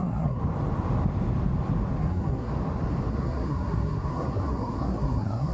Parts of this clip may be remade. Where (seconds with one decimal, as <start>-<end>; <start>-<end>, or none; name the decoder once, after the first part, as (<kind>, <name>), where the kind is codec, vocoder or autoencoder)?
0.0-0.4 (codec, SNAC); 2.0-2.5; 3.1-5.5